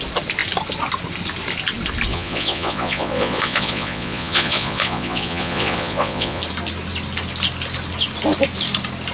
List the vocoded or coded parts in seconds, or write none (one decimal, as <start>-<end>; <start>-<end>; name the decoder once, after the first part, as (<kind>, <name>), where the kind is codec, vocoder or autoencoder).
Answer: 2.1-6.4 (vocoder, Vocos)